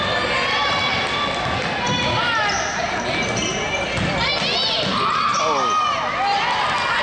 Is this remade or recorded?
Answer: recorded